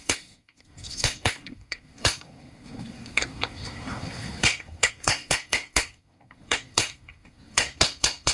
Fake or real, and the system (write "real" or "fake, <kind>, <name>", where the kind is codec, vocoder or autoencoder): fake, codec, SNAC